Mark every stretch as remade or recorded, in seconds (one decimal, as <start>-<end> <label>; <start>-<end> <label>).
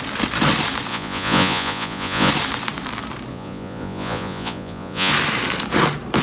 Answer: 0.0-0.9 recorded; 0.9-2.3 remade; 2.3-3.3 recorded; 3.3-5.1 remade; 5.1-6.2 recorded